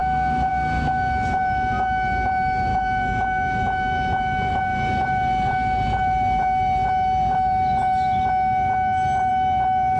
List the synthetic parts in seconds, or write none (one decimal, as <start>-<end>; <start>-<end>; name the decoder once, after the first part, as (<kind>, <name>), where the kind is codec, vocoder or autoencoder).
none